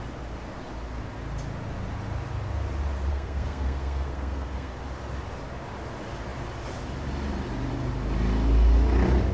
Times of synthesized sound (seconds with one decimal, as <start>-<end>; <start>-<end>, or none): 3.1-4.7